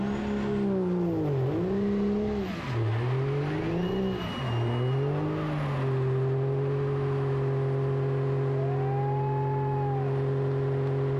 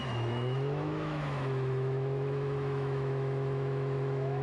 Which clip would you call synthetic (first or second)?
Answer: second